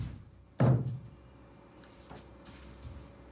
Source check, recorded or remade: recorded